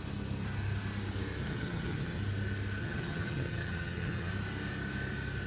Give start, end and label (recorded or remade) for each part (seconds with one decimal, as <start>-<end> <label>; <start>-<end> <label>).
0.0-1.4 recorded; 1.4-2.2 remade; 2.2-2.8 recorded; 2.8-4.3 remade; 4.3-5.5 recorded